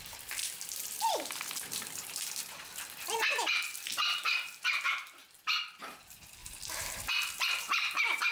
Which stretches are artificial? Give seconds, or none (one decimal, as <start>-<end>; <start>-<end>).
0.0-0.4; 3.3-8.3